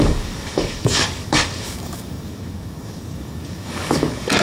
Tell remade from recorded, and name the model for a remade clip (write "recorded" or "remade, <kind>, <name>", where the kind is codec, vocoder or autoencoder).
remade, codec, DAC